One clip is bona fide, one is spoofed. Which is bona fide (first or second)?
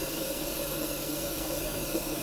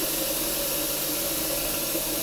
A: second